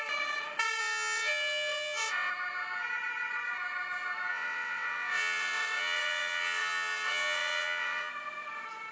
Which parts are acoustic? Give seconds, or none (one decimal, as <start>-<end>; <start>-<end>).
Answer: 0.0-0.8; 2.3-4.3; 8.1-8.9